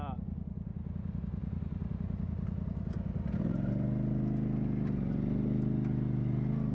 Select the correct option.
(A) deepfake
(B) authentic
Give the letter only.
B